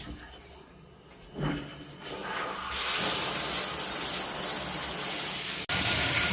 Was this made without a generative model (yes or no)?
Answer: yes